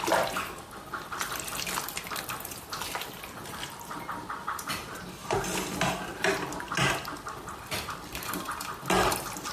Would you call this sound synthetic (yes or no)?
no